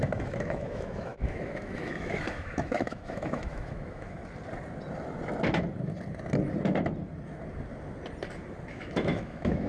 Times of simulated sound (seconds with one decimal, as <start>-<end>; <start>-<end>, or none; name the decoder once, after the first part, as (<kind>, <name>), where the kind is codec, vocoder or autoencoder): 0.0-4.2 (autoencoder, DAC-VAE); 8.7-9.7